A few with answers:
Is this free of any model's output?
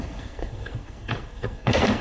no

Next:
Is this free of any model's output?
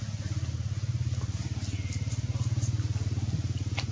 yes